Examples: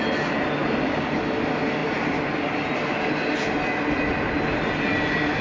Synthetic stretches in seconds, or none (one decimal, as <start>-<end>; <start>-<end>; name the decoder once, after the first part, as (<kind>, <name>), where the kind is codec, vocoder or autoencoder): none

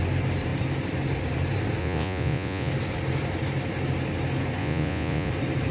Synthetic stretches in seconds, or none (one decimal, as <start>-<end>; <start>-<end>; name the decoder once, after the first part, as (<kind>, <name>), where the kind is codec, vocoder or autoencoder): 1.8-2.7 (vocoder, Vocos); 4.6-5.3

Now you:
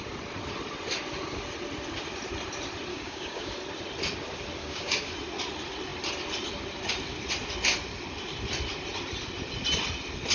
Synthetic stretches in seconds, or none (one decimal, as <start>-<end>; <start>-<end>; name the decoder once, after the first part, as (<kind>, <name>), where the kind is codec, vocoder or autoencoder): 2.9-3.5 (codec, DAC); 4.6-5.1

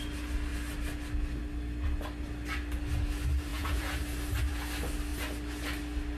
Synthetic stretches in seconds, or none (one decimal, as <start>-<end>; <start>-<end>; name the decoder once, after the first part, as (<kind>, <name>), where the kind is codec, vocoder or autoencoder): 3.5-4.0 (vocoder, Vocos)

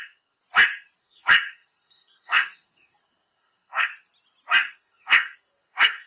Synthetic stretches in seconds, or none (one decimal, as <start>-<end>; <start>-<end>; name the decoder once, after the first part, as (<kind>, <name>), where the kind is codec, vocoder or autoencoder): 0.0-0.4 (codec, SNAC); 1.0-3.9; 4.7-6.1

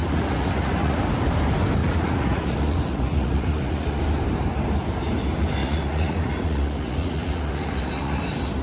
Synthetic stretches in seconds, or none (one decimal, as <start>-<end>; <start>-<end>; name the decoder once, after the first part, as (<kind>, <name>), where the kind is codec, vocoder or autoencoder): 0.0-1.0 (vocoder, Vocos); 1.8-4.0; 5.6-8.2

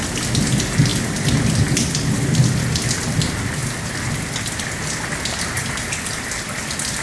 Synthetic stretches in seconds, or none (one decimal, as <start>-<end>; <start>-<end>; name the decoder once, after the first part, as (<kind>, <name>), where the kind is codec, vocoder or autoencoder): none

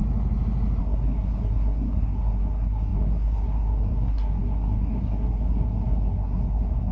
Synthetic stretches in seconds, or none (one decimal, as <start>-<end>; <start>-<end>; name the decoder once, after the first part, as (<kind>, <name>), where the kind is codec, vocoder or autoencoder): 0.8-6.9 (codec, SNAC)